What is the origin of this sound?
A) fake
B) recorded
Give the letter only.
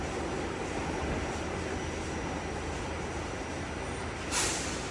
B